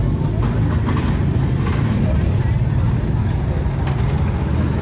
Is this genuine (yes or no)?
yes